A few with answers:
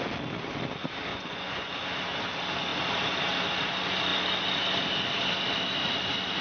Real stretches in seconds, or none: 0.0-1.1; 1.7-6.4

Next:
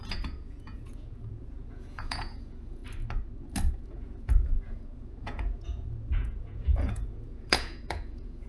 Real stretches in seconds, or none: 2.8-3.7

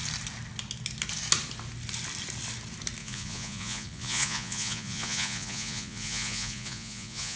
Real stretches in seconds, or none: 0.0-3.0

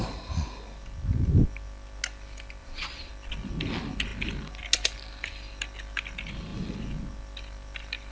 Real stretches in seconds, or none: 0.0-2.6; 3.1-8.1

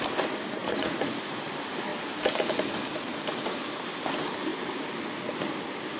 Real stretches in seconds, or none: 0.0-0.6; 1.4-6.0

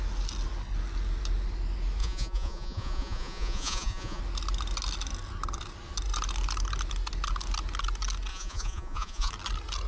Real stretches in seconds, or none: 0.0-2.0; 4.2-8.3; 9.3-9.9

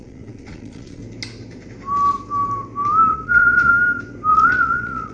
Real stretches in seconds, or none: 1.0-3.1; 3.7-4.3

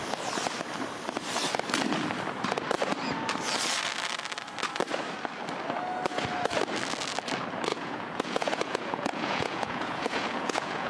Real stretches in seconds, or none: 0.0-7.7